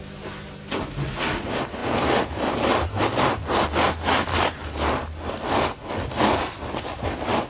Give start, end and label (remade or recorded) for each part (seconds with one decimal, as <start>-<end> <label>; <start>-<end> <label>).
0.0-7.5 recorded